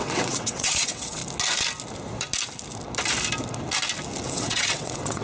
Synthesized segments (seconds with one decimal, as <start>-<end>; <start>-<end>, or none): 0.0-1.2; 4.3-5.2